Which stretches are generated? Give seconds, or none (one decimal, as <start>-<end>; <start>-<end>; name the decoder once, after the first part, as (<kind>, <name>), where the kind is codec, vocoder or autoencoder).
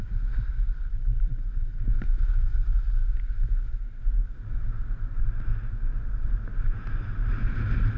none